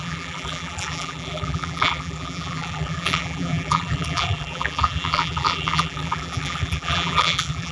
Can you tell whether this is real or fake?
fake